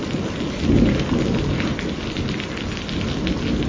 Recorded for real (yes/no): yes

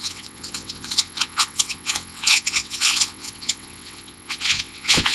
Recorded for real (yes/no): no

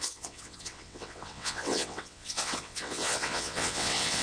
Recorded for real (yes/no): no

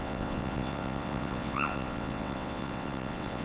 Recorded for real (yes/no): no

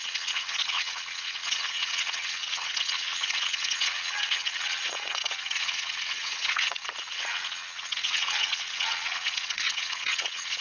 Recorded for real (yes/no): no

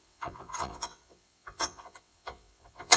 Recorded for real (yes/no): no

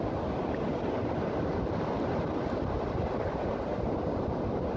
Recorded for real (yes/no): yes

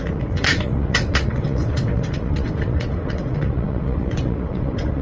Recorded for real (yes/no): no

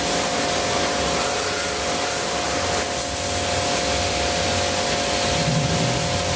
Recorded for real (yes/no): yes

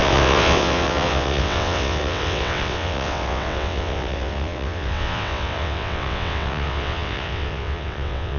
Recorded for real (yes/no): no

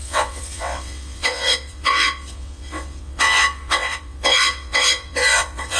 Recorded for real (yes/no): no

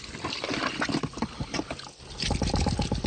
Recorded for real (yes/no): yes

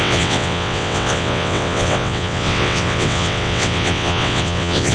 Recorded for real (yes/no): no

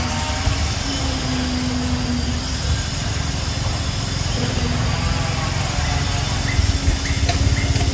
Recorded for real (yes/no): yes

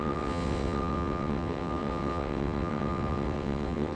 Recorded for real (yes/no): no